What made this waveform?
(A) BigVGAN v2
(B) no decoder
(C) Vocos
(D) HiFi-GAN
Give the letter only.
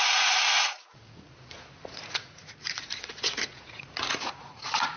C